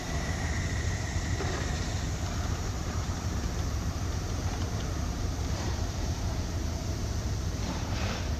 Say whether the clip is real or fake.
fake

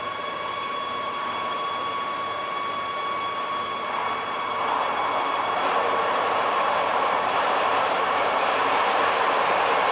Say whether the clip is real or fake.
fake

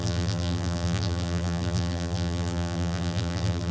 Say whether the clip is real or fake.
fake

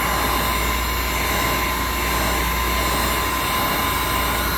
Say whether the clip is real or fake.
real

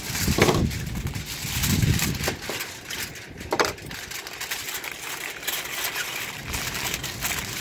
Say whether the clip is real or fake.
fake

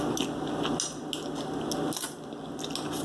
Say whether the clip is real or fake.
real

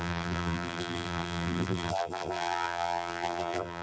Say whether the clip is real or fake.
fake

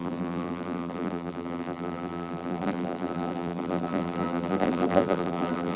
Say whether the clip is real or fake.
fake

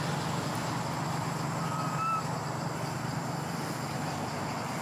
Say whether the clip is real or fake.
real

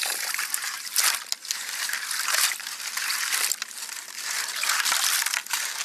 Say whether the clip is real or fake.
fake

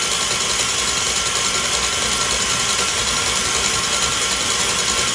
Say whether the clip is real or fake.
real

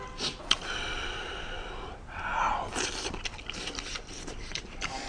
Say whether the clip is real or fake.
real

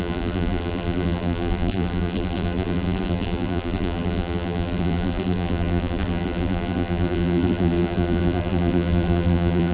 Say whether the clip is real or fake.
fake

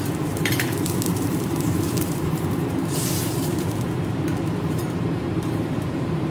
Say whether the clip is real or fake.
fake